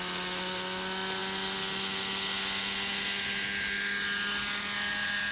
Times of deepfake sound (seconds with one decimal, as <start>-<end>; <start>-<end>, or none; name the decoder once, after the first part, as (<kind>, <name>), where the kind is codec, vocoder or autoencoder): none